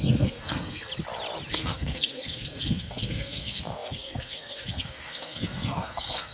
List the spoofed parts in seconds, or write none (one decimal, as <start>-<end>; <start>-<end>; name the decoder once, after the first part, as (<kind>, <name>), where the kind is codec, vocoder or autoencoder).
0.0-0.9 (codec, SNAC); 1.5-6.3